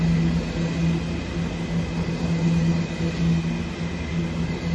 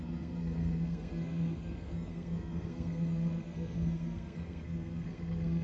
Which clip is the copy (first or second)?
second